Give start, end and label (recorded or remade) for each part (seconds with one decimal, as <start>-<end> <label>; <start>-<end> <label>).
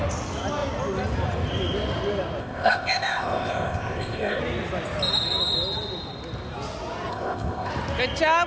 0.0-2.4 recorded; 2.4-4.4 remade; 4.4-7.1 recorded; 7.1-7.7 remade; 7.7-8.5 recorded